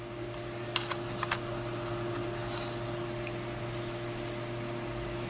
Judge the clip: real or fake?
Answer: real